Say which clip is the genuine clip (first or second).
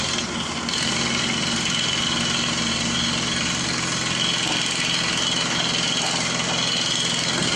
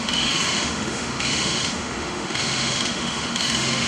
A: first